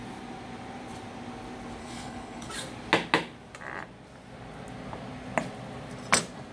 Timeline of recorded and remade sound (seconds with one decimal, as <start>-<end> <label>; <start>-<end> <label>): 0.0-1.8 recorded; 1.8-2.5 remade; 2.5-6.5 recorded